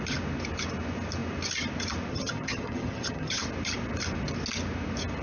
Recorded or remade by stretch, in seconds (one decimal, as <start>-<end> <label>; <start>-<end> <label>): 0.0-2.1 recorded; 2.1-3.4 remade; 3.4-5.2 recorded